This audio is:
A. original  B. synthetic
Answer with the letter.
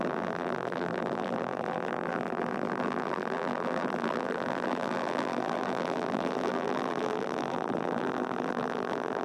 B